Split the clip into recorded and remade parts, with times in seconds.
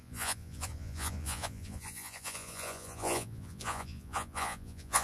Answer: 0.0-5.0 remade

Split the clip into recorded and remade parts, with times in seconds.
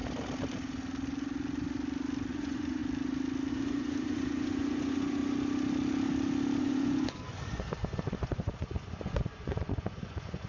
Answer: 0.0-2.3 recorded; 2.3-2.8 remade; 2.8-3.5 recorded; 3.5-5.2 remade; 5.2-6.6 recorded; 6.6-10.5 remade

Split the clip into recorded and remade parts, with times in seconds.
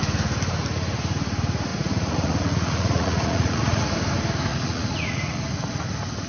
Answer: 0.0-1.7 recorded; 1.7-3.9 remade; 3.9-4.5 recorded; 4.5-5.4 remade; 5.4-6.3 recorded